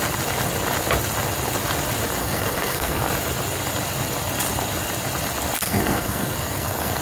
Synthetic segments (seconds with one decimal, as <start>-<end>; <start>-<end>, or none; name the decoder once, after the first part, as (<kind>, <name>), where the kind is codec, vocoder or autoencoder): 2.2-3.1 (codec, SNAC); 5.6-7.0